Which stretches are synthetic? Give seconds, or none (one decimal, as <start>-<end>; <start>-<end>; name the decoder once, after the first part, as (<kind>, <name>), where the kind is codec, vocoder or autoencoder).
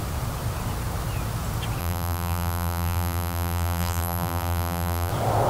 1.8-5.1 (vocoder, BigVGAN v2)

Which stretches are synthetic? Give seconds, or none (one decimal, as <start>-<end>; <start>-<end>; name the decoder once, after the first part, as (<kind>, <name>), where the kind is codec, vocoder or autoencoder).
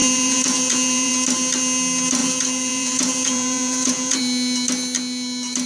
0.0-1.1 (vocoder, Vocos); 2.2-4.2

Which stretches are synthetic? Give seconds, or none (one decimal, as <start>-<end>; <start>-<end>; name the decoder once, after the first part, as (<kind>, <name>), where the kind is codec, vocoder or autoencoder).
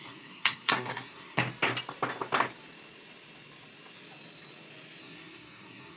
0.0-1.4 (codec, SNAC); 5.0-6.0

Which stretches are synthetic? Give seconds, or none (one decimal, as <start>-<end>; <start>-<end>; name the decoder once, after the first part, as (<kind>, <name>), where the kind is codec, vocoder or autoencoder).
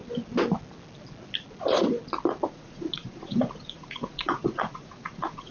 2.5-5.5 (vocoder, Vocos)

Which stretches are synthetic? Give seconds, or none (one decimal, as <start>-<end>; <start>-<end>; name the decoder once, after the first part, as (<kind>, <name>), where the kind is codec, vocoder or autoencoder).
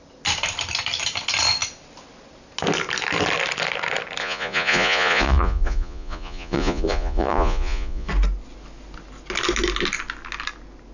4.2-8.1 (vocoder, Vocos)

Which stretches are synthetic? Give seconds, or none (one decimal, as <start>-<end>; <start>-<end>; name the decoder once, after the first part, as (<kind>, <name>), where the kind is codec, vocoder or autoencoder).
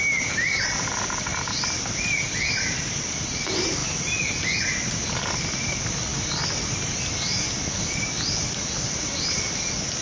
none